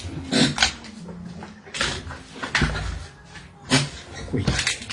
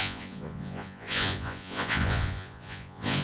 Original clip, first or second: first